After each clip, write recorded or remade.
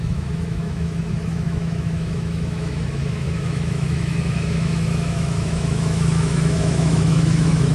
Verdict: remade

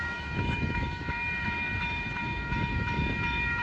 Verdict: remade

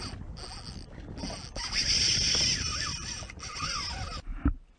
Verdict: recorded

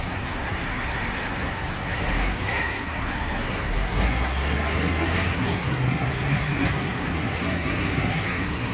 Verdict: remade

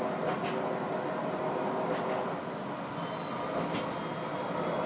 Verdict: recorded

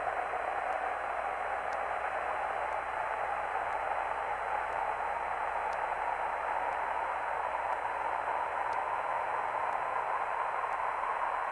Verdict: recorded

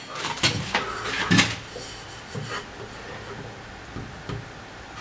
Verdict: recorded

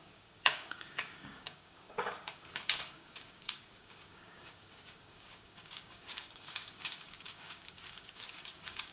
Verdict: remade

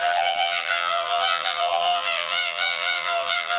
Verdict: remade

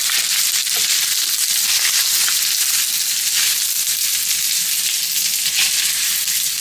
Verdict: recorded